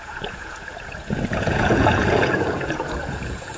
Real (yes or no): no